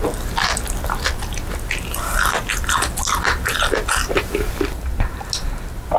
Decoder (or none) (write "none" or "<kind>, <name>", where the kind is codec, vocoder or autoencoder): none